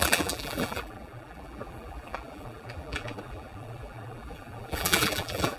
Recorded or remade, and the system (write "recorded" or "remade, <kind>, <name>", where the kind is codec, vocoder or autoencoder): remade, vocoder, BigVGAN v2